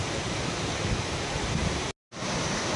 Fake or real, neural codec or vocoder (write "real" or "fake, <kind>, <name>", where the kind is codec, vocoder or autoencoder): real